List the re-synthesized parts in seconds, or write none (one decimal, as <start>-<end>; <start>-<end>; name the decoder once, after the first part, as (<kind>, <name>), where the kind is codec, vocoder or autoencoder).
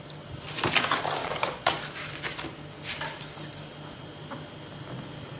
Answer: 1.2-1.8 (vocoder, Vocos)